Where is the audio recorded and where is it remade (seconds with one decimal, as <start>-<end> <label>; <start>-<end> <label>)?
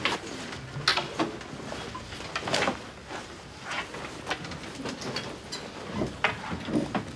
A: 0.0-7.2 recorded